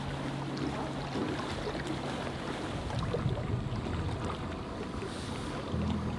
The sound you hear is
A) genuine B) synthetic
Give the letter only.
A